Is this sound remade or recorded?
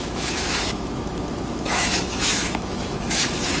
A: remade